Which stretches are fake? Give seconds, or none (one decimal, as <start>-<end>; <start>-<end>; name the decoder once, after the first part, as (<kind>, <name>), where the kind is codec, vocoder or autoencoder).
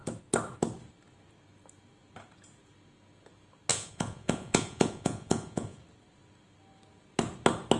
3.7-5.8 (vocoder, Vocos)